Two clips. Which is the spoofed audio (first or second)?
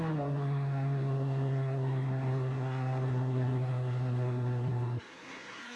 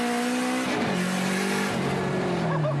first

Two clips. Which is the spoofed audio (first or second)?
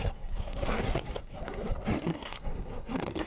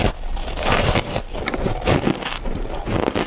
first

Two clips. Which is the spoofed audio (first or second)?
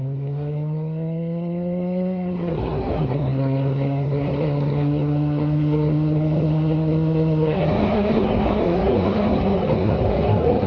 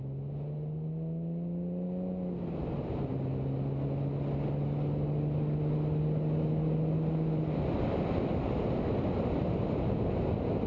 first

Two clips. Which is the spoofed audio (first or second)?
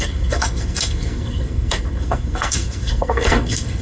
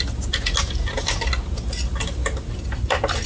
first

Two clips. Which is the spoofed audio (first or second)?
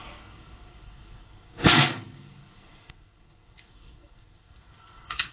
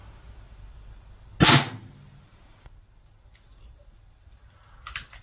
first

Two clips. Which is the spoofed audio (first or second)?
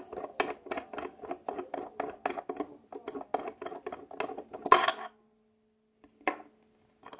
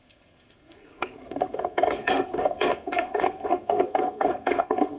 second